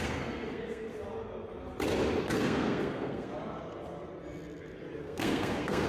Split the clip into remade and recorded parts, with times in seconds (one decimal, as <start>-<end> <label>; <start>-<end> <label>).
0.0-0.9 remade; 0.9-2.2 recorded; 2.2-3.3 remade; 3.3-5.0 recorded; 5.0-5.9 remade